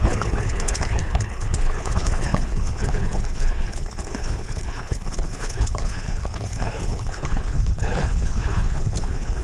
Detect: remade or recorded remade